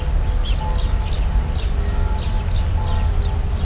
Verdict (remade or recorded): recorded